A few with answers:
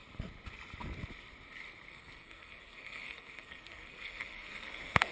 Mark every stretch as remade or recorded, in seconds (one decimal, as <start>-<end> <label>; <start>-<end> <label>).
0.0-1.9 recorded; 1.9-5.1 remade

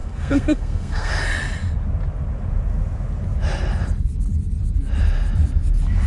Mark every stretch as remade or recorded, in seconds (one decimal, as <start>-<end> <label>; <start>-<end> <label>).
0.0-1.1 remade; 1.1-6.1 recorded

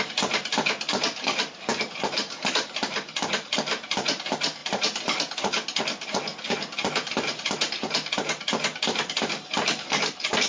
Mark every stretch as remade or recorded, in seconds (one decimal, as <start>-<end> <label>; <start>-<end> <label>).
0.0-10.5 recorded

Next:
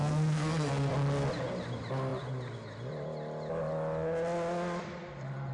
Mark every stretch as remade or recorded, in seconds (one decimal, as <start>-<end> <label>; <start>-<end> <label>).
0.0-0.9 remade; 0.9-5.5 recorded

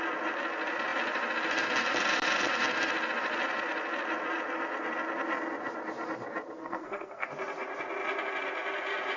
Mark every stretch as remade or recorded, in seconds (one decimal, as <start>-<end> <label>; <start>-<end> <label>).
0.0-6.6 recorded; 6.6-7.3 remade; 7.3-9.2 recorded

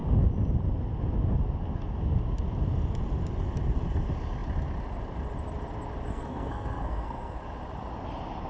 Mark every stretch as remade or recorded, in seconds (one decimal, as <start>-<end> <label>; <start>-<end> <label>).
0.0-6.1 recorded; 6.1-7.4 remade; 7.4-8.5 recorded

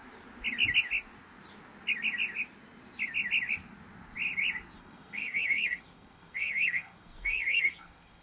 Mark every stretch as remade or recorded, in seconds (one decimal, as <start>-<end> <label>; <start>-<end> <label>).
0.0-4.8 recorded; 4.8-8.2 remade

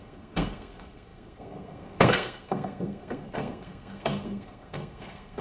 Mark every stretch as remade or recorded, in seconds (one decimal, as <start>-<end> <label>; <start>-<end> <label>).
0.0-5.4 remade